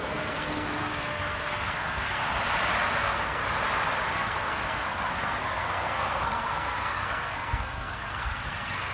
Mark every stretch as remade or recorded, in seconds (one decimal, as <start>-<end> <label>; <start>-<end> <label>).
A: 0.0-2.2 remade; 2.2-2.9 recorded; 2.9-3.4 remade; 3.4-4.1 recorded; 4.1-8.9 remade